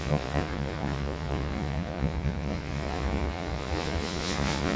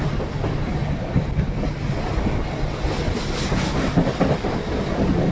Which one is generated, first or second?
first